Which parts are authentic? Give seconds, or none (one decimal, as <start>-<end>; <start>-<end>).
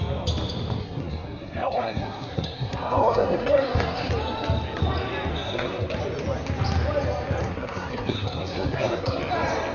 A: 0.0-0.8; 4.1-5.3; 5.9-7.4; 9.2-9.7